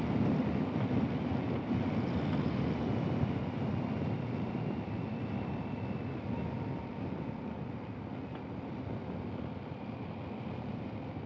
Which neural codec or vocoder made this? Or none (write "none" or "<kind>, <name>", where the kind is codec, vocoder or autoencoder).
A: none